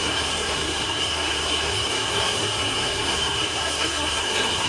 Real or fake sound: fake